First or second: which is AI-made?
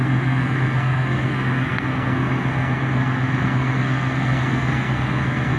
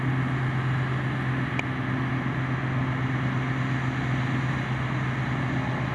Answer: first